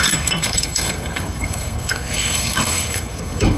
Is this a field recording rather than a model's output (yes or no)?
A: no